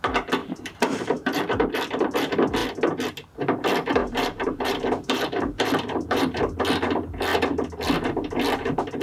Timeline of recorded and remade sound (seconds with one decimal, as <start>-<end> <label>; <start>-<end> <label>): 0.0-0.4 recorded; 0.4-1.7 remade; 1.7-4.0 recorded; 4.0-6.6 remade; 6.6-9.0 recorded